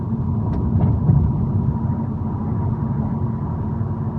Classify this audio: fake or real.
real